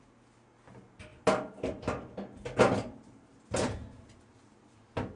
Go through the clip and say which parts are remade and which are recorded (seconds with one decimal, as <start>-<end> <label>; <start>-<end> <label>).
0.0-5.2 recorded